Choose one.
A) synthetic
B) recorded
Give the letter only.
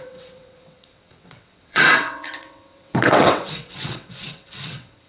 A